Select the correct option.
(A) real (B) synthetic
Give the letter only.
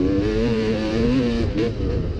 B